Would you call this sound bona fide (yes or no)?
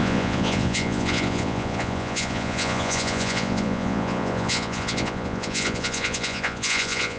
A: no